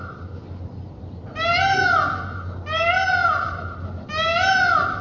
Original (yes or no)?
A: yes